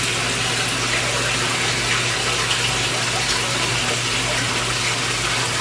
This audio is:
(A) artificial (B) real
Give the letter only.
B